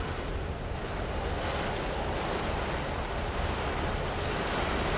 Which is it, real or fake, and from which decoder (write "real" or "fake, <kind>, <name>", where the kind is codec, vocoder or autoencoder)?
real